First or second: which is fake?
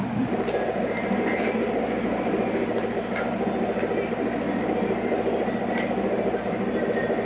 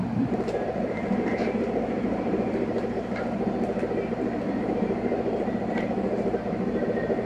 second